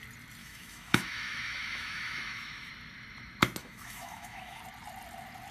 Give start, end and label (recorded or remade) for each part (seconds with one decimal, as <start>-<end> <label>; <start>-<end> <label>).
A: 0.0-0.4 recorded; 0.4-2.7 remade; 2.7-3.6 recorded; 3.6-4.6 remade; 4.6-5.5 recorded